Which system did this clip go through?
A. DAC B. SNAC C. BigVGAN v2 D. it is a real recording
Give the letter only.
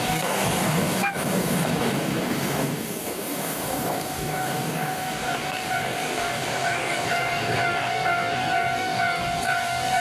A